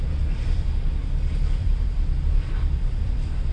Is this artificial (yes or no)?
yes